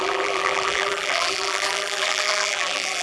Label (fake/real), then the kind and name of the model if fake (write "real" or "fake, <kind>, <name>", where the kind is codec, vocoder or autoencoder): fake, vocoder, BigVGAN v2